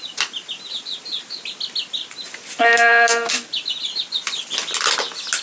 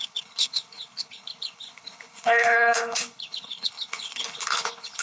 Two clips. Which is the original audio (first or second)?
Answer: first